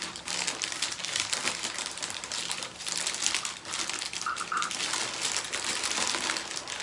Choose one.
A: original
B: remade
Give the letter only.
A